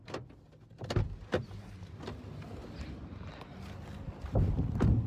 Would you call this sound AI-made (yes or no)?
no